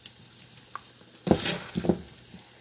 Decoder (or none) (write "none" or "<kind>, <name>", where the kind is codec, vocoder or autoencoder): none